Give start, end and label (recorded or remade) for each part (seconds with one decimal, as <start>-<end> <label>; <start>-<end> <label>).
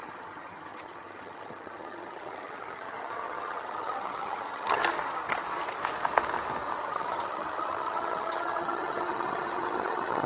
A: 0.0-4.8 remade; 4.8-6.8 recorded; 6.8-10.3 remade